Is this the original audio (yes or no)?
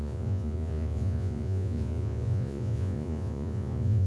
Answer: no